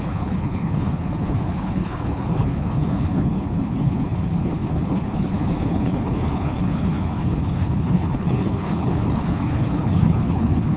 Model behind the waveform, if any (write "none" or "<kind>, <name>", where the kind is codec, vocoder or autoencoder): codec, HILCodec